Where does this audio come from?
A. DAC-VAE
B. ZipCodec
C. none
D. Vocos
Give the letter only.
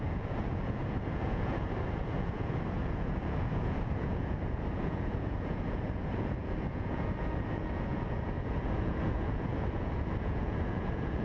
D